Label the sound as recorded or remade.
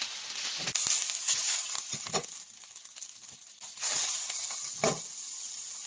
recorded